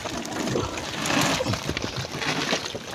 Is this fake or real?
real